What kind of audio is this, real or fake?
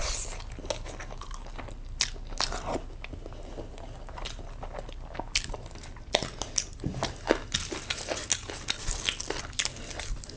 real